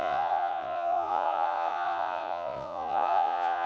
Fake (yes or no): yes